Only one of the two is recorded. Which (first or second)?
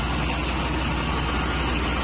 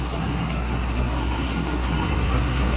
first